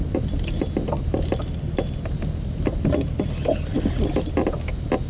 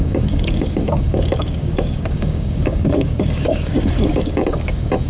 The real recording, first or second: first